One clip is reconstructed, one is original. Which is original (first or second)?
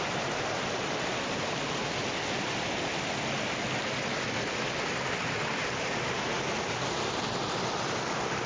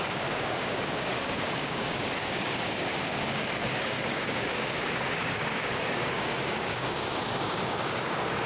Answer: first